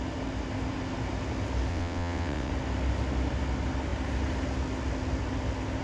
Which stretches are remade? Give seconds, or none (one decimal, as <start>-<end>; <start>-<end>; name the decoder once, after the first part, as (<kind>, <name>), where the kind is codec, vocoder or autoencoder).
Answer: 1.7-2.5 (vocoder, WaveNeXt)